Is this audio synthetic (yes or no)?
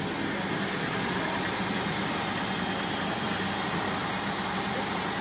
no